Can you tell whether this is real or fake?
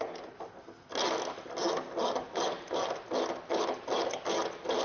real